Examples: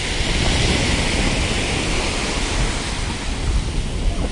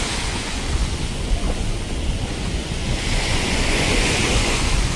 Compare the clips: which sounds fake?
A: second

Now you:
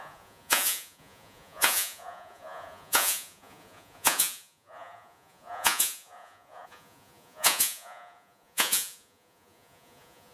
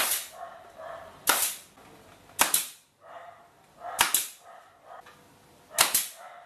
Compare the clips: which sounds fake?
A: first